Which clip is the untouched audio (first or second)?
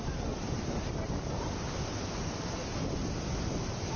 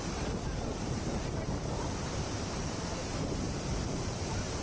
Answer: first